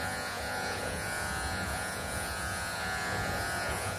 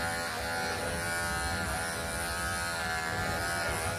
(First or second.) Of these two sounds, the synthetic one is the first